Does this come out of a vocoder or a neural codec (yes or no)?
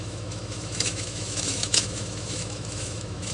yes